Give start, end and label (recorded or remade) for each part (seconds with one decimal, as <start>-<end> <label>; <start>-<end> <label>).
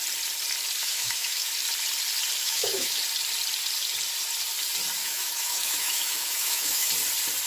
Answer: 0.0-0.8 recorded; 0.8-1.5 remade; 1.5-2.4 recorded; 2.4-3.0 remade; 3.0-5.0 recorded; 5.0-6.9 remade; 6.9-7.5 recorded